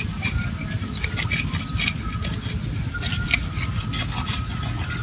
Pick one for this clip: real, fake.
real